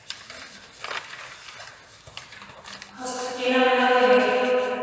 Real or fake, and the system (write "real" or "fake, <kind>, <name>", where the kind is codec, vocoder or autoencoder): real